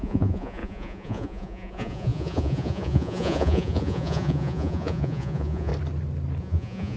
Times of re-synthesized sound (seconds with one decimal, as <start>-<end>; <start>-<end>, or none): 0.0-5.7; 6.4-7.0